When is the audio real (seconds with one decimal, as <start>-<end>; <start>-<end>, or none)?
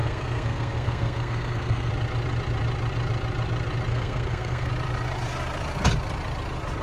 1.9-3.9; 4.7-6.8